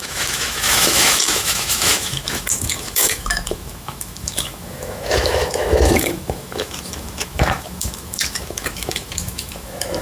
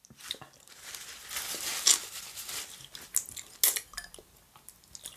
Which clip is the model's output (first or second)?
first